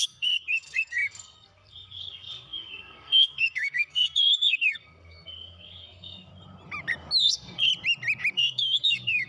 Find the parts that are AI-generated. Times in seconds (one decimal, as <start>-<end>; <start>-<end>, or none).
0.0-6.3; 7.2-7.7; 8.3-9.3